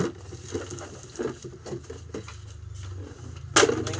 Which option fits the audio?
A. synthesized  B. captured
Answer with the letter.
B